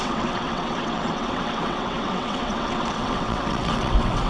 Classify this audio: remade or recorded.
remade